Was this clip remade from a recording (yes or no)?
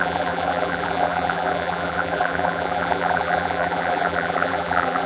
yes